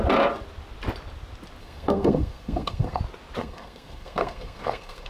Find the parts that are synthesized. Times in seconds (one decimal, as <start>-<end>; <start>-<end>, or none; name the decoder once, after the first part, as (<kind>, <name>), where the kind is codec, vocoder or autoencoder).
1.6-3.0 (codec, SNAC); 3.4-5.1